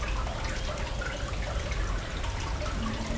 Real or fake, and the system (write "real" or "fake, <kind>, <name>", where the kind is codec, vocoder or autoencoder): real